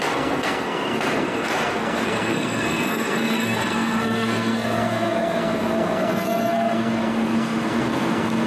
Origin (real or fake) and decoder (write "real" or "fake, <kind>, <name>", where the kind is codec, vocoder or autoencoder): fake, codec, SNAC